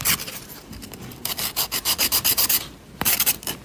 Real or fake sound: fake